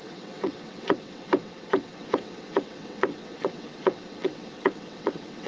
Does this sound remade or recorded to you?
remade